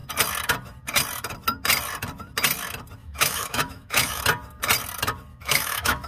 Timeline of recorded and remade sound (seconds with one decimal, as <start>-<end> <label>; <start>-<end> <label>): 0.0-3.0 recorded; 3.0-4.2 remade; 4.2-5.3 recorded; 5.3-6.1 remade